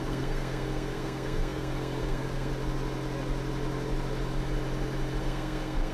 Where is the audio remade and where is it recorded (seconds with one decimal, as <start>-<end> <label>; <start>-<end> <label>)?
0.0-2.5 remade; 2.5-5.2 recorded; 5.2-5.9 remade